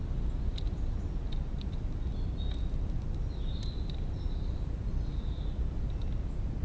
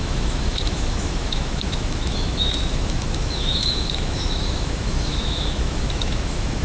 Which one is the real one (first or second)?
first